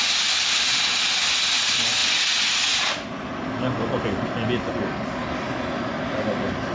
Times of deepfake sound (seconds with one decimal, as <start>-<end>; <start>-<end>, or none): none